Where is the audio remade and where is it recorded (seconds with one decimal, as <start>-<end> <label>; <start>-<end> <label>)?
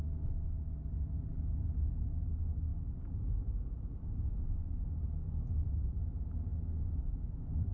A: 0.0-7.7 recorded